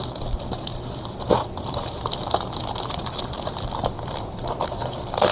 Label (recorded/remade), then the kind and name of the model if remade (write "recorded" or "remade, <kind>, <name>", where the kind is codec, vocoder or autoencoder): remade, vocoder, BigVGAN v2